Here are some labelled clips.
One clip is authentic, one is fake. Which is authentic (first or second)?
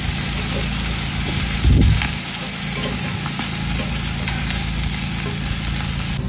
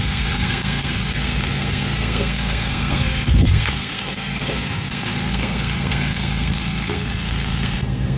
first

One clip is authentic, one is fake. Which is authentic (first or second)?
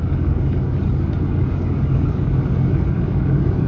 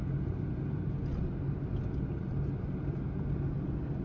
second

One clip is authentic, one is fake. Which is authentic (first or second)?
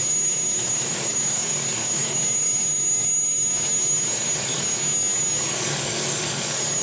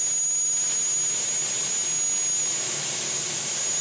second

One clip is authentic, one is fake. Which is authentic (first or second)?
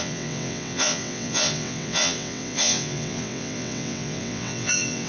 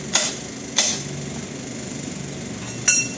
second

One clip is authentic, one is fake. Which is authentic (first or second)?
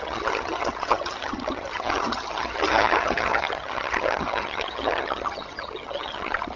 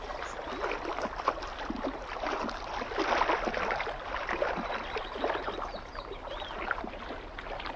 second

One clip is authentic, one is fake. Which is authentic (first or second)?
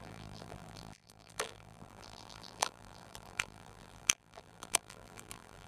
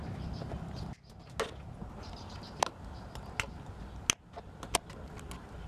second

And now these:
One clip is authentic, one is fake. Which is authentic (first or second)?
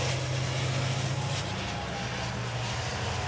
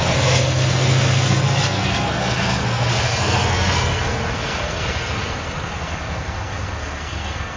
first